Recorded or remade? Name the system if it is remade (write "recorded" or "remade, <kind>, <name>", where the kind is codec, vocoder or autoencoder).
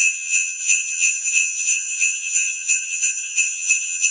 remade, vocoder, HiFi-GAN